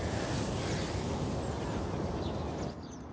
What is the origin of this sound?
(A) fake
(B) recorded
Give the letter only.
B